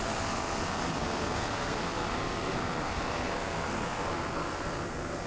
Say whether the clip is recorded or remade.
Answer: remade